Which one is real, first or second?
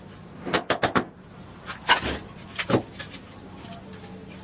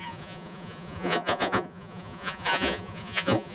first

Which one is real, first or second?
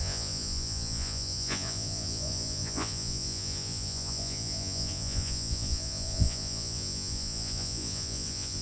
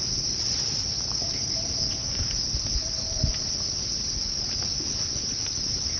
second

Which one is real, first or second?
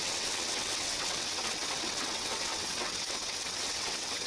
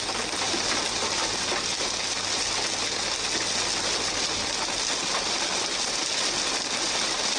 second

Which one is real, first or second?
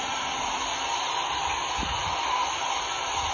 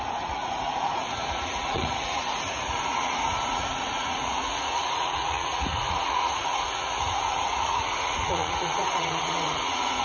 first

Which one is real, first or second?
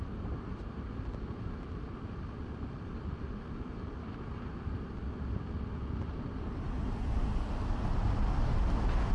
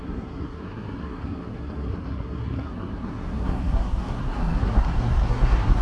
first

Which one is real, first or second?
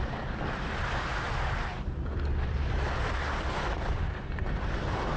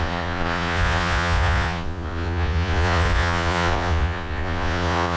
first